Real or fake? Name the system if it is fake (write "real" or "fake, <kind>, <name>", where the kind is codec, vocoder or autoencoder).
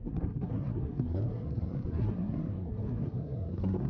fake, codec, SNAC